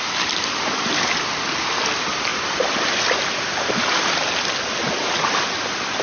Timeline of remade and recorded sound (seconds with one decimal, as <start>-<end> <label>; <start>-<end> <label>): 0.0-6.0 recorded